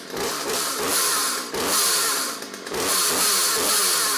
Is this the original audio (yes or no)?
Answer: yes